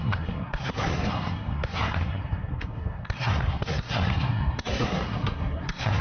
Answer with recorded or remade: remade